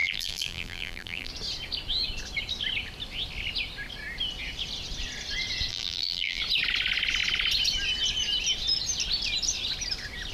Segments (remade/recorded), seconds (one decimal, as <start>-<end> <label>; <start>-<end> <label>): 0.0-1.3 remade; 1.3-5.7 recorded; 5.7-6.4 remade; 6.4-10.3 recorded